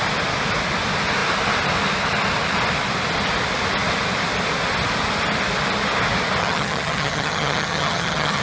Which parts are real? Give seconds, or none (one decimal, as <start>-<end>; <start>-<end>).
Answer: 0.0-6.4